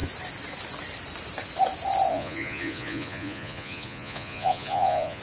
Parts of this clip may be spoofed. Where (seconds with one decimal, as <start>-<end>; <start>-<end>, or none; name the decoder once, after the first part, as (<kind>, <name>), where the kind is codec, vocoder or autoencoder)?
2.1-5.2 (vocoder, Vocos)